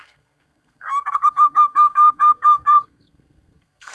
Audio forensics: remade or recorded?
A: remade